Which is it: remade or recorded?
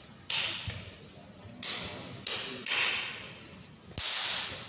recorded